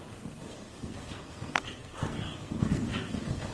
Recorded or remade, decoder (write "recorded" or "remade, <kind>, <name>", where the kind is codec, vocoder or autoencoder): remade, codec, SNAC